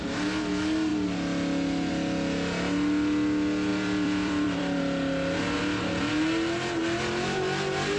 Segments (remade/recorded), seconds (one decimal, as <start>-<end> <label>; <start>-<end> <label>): 0.0-3.7 recorded; 3.7-4.8 remade; 4.8-8.0 recorded